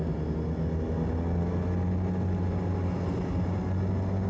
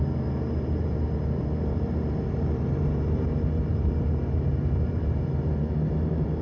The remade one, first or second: second